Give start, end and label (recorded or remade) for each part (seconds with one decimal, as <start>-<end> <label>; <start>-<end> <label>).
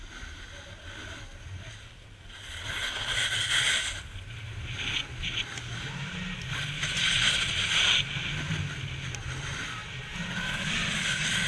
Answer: 0.0-11.5 recorded